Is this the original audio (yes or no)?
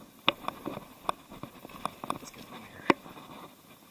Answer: yes